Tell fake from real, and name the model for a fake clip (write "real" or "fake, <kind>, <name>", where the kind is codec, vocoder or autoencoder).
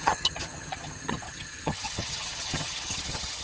fake, vocoder, HiFi-GAN